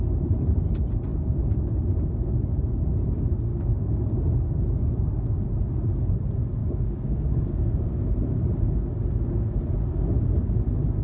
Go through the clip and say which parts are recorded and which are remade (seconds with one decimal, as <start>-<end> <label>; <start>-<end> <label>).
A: 0.0-3.5 recorded; 3.5-4.3 remade; 4.3-6.6 recorded; 6.6-8.0 remade; 8.0-11.0 recorded